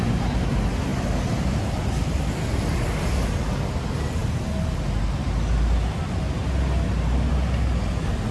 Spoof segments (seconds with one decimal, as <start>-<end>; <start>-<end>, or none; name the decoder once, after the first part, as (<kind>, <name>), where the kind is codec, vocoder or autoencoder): 0.9-3.7 (vocoder, BigVGAN v2)